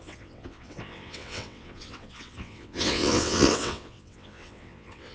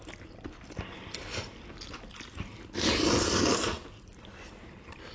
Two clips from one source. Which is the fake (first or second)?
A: first